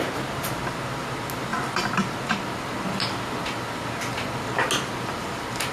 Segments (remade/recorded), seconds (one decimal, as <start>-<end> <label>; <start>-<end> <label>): 0.0-5.7 recorded